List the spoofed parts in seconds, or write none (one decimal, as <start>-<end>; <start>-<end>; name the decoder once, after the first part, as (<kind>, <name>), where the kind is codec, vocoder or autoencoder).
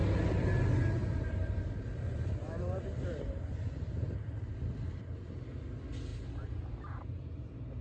1.0-5.4 (vocoder, BigVGAN v2); 6.1-7.2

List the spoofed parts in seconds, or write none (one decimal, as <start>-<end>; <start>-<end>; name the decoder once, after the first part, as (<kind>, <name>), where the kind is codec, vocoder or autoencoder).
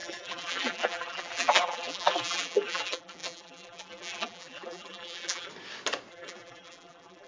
0.0-5.5 (vocoder, BigVGAN v2); 6.1-7.3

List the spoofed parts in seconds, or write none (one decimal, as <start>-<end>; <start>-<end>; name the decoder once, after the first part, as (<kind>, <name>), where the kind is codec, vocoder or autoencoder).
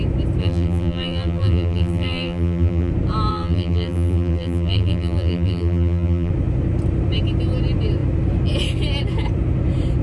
0.4-2.9 (vocoder, BigVGAN v2); 3.3-6.3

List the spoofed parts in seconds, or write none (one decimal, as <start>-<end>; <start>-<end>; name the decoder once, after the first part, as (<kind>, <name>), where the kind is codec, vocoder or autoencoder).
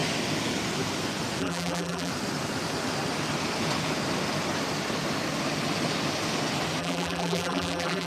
1.4-2.1 (vocoder, BigVGAN v2); 6.8-8.1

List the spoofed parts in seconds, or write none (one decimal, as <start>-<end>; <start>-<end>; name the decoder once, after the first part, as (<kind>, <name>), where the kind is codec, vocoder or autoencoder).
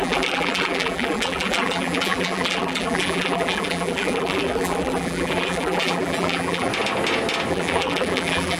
0.0-6.7 (vocoder, BigVGAN v2); 7.5-8.6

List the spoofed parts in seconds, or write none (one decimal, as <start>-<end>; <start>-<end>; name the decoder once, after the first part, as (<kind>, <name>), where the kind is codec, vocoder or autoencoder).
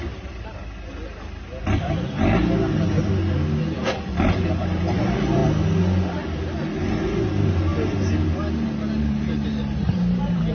0.0-0.6 (vocoder, BigVGAN v2); 4.0-5.4; 6.8-7.7; 9.0-10.5